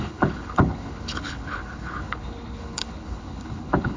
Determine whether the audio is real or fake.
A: fake